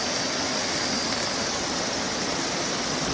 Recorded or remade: recorded